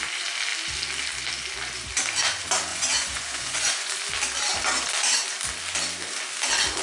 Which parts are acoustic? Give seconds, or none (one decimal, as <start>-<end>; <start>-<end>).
0.0-2.7; 3.9-6.8